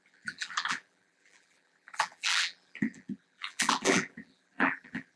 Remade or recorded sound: remade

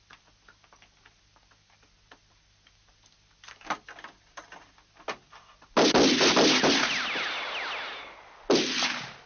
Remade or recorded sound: recorded